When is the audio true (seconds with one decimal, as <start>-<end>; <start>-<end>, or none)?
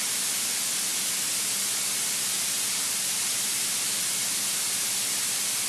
0.0-5.7